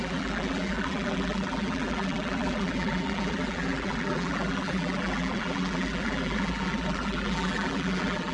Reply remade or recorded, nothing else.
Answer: remade